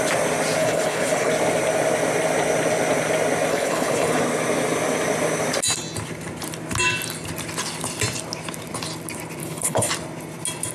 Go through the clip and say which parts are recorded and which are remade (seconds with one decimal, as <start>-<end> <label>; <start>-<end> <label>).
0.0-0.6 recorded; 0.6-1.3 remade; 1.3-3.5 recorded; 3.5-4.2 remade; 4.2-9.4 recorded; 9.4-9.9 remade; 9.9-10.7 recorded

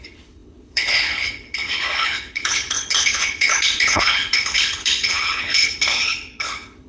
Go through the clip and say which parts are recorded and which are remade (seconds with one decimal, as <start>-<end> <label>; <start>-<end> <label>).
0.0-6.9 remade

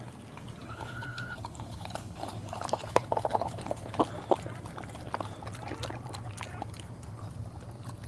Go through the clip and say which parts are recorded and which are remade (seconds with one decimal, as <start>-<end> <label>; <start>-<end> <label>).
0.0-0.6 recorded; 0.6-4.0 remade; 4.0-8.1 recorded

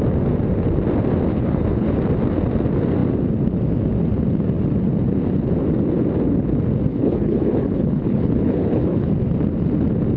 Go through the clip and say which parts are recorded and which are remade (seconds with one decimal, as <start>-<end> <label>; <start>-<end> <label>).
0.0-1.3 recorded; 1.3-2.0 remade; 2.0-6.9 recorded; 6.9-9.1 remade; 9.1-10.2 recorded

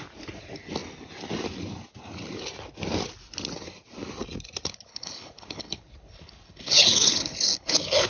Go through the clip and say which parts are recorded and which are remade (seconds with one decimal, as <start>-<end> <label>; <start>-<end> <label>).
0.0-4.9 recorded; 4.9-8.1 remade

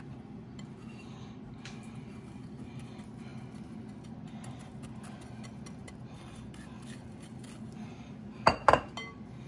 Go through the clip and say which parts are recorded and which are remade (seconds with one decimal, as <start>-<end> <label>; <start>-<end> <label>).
0.0-9.5 recorded